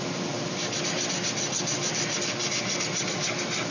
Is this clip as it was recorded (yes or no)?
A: yes